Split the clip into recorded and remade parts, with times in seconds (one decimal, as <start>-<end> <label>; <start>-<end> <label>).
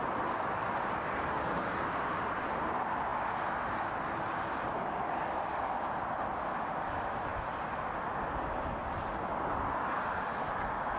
0.0-11.0 recorded